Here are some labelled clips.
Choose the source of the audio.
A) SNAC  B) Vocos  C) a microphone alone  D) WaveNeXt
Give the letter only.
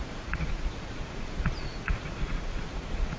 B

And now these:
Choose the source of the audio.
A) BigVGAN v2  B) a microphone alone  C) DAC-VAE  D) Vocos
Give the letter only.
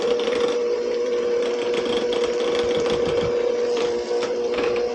A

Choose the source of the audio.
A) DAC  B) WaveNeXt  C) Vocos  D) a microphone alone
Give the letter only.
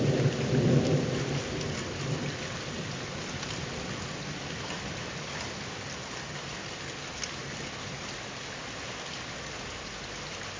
D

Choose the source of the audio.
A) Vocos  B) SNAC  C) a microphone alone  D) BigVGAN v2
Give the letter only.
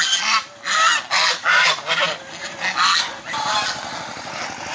C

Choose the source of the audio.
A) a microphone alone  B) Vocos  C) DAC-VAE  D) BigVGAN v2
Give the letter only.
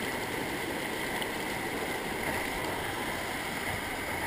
A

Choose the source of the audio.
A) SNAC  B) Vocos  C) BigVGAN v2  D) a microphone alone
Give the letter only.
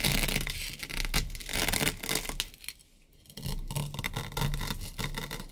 D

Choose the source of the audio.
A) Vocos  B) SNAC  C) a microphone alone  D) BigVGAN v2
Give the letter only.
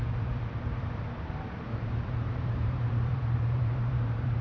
D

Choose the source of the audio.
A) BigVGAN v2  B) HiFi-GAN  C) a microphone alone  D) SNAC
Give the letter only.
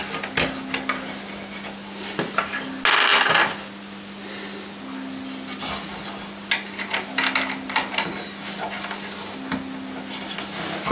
C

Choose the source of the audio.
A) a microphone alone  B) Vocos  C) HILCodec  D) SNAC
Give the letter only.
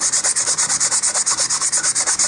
A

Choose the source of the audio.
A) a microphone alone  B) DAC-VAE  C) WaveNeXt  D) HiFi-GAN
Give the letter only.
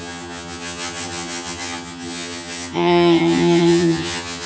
D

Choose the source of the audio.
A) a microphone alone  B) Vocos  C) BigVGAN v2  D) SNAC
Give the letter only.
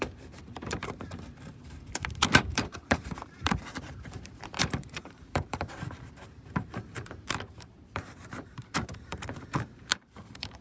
C